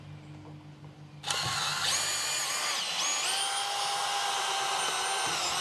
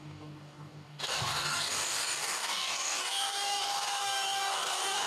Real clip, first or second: first